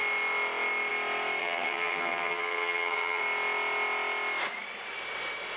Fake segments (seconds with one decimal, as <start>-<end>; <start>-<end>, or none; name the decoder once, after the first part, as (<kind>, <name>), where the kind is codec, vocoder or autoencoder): 1.4-3.2 (vocoder, HiFi-GAN)

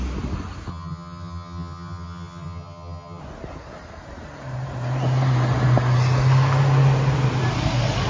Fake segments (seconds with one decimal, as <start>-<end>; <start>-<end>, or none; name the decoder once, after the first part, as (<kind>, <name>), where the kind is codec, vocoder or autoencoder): 0.7-3.2 (vocoder, HiFi-GAN)

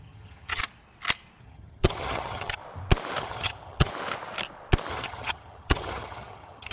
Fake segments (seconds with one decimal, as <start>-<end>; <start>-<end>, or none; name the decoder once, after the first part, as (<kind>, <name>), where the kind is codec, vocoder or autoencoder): 0.0-0.6 (vocoder, HiFi-GAN); 1.4-2.6; 3.2-3.9; 4.9-6.7

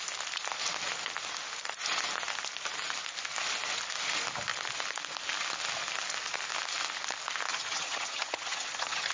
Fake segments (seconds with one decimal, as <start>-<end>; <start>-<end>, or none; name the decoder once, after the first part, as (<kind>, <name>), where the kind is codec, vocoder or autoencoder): 7.5-9.1 (vocoder, HiFi-GAN)

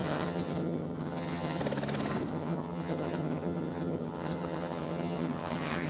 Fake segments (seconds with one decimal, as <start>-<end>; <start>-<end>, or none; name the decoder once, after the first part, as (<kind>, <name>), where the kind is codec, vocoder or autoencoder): 0.0-1.6 (vocoder, HiFi-GAN); 2.3-5.9